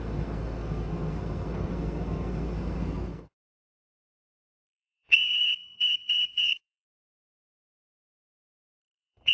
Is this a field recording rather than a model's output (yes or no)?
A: no